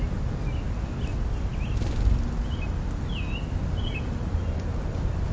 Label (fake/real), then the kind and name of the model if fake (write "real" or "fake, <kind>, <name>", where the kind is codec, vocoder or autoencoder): real